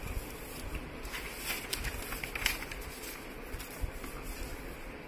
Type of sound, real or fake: real